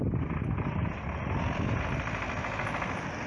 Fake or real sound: real